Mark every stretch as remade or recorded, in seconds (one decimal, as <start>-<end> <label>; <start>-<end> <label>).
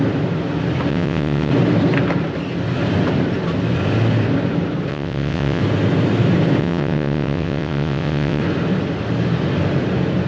0.0-0.9 recorded; 0.9-1.5 remade; 1.5-4.9 recorded; 4.9-5.6 remade; 5.6-6.6 recorded; 6.6-8.4 remade; 8.4-10.3 recorded